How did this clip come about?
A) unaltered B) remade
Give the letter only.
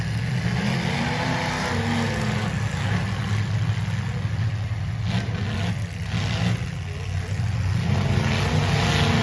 A